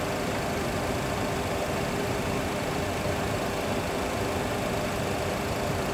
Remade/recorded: remade